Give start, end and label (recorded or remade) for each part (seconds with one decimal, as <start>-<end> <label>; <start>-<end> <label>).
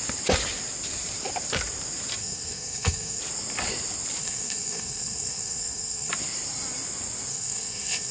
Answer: 0.0-2.2 recorded; 2.2-3.2 remade; 3.2-4.2 recorded; 4.2-6.1 remade; 6.1-7.3 recorded; 7.3-8.1 remade